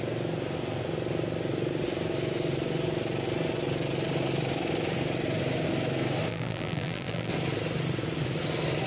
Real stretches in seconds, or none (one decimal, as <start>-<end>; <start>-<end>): 0.0-6.3; 7.3-8.9

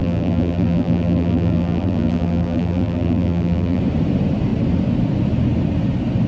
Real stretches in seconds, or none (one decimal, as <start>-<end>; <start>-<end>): 3.8-6.3

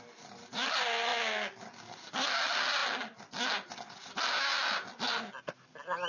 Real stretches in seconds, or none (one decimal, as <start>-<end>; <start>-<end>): 0.0-6.1

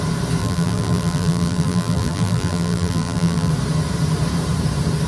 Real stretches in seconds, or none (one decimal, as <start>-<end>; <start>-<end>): 0.0-0.4; 3.5-5.1

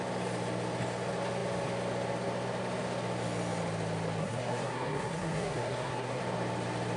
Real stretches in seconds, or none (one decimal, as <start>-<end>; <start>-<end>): 0.0-4.2; 6.2-7.0

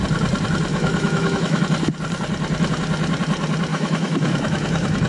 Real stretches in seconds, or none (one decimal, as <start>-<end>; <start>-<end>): 0.0-0.7; 1.6-3.7

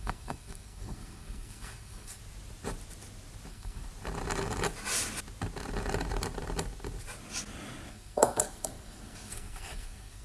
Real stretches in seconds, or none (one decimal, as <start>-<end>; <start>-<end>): 2.2-3.5; 3.9-7.9

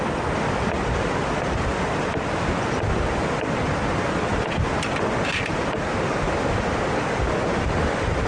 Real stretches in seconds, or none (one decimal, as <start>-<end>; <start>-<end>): 0.0-8.3